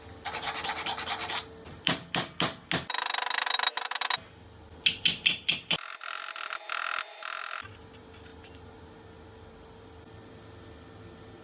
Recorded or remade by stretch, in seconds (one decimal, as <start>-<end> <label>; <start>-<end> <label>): 0.0-11.4 recorded